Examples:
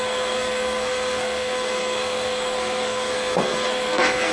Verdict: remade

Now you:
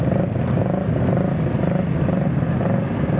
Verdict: recorded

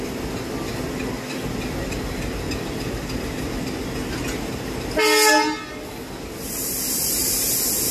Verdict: recorded